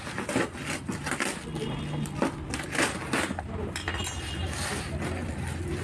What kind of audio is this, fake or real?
real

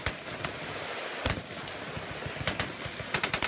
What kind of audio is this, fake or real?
real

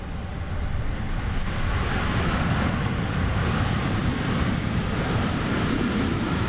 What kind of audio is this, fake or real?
real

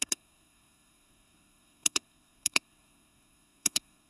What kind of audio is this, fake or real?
fake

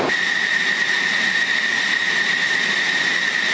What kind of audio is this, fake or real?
real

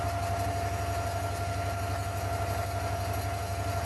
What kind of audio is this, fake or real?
real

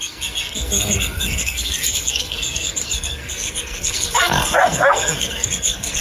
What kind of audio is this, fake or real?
fake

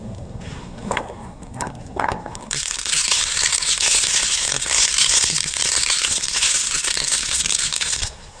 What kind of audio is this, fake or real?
fake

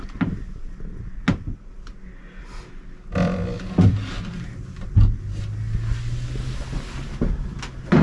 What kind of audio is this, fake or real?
real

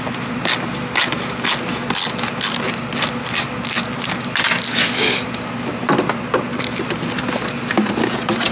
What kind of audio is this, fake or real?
real